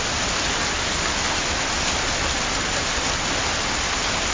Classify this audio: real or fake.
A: real